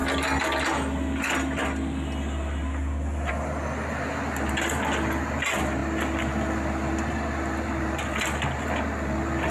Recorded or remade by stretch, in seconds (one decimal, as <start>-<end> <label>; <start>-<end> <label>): 0.0-9.5 recorded